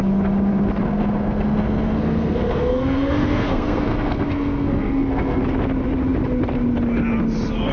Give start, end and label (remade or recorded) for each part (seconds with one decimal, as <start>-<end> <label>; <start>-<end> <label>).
0.0-0.8 recorded; 0.8-5.4 remade; 5.4-7.7 recorded